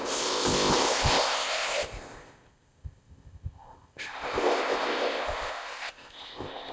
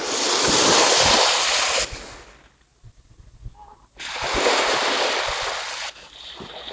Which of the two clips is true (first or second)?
second